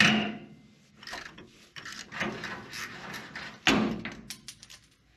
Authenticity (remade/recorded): recorded